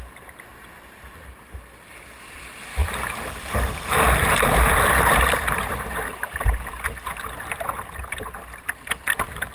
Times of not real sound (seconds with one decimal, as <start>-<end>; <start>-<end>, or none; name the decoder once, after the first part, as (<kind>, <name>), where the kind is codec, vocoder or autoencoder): 2.7-7.7 (vocoder, BigVGAN v2)